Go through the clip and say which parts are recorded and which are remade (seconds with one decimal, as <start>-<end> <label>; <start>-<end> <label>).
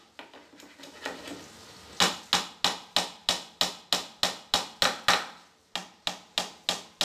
0.0-7.0 recorded